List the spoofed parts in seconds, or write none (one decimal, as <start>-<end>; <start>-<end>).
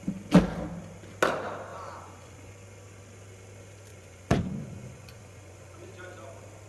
1.7-2.5; 3.9-5.9